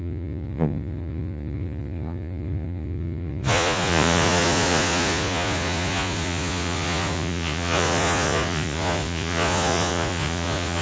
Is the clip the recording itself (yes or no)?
no